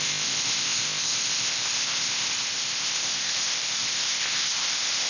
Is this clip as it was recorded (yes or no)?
no